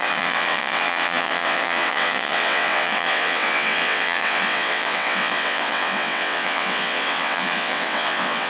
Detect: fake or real fake